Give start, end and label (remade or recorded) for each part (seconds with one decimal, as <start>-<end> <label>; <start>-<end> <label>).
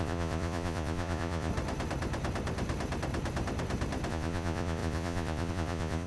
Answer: 0.0-1.5 remade; 1.5-4.1 recorded; 4.1-6.1 remade